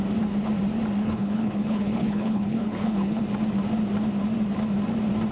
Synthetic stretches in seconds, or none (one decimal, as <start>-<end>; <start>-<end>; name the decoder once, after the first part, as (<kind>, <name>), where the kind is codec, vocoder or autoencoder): 1.0-3.2 (codec, HILCodec)

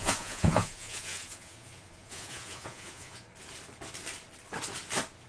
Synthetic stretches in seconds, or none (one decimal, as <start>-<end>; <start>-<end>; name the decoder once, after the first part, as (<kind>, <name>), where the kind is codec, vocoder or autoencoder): 0.0-3.3 (vocoder, Vocos)

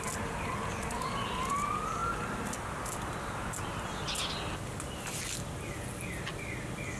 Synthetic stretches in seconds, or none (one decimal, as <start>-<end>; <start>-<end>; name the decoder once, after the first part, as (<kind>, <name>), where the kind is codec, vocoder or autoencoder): none

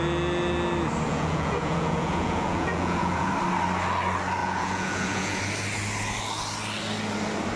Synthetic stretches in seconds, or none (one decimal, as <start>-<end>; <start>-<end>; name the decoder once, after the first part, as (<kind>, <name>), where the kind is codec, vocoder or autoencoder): 1.1-3.3 (vocoder, Vocos); 4.4-5.4

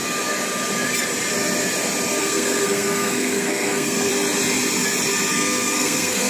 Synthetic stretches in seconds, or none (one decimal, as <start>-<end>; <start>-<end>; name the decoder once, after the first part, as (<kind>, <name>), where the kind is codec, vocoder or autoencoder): 2.2-4.1 (codec, SNAC); 5.3-6.3

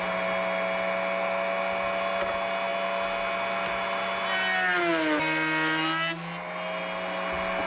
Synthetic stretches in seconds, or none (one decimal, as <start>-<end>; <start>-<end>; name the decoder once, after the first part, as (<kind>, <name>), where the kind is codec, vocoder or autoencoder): none

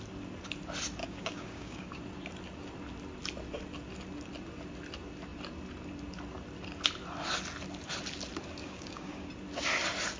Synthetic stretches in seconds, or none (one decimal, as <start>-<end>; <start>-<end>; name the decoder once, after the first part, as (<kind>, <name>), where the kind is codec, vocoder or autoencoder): 1.0-2.0 (codec, DAC); 8.6-9.3

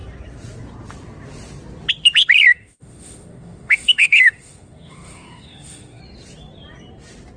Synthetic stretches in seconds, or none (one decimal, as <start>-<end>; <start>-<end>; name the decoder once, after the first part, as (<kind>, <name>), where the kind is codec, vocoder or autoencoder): 2.5-6.0 (autoencoder, DAC-VAE)